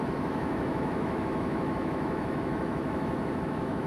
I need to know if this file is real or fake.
fake